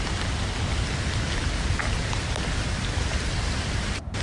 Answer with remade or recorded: recorded